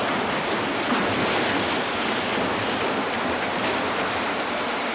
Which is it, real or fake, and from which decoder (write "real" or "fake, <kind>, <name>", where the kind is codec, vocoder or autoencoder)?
real